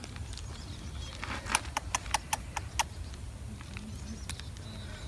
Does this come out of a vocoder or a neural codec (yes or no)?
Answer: no